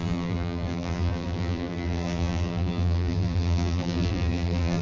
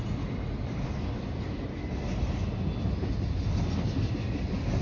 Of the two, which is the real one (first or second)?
second